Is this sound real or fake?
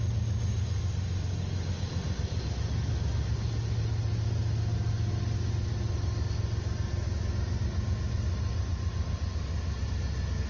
real